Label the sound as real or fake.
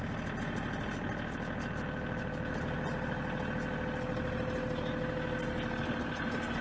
real